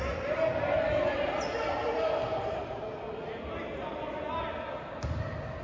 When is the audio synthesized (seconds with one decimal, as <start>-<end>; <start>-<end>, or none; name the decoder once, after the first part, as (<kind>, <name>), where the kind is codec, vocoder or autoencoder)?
none